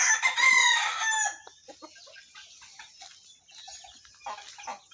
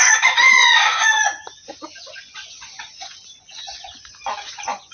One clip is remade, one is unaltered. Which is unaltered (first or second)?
first